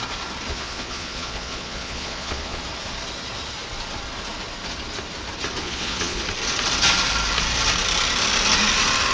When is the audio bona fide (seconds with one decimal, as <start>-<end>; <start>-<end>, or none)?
0.0-0.5; 2.6-5.6; 6.2-9.1